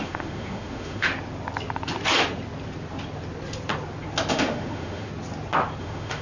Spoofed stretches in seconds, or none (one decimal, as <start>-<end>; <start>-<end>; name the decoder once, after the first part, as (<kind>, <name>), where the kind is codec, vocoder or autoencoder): 0.0-1.1 (autoencoder, DAC-VAE); 4.3-5.1; 5.8-6.2